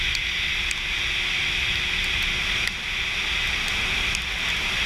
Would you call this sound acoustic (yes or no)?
yes